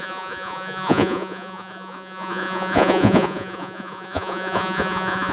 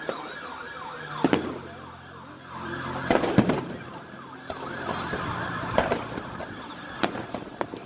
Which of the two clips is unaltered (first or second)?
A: second